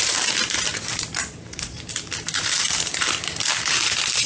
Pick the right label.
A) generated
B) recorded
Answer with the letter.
A